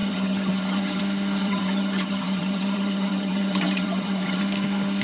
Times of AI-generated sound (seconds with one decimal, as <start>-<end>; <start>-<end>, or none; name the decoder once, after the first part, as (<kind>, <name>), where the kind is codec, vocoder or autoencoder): 0.0-1.0 (vocoder, HiFi-GAN); 1.4-4.4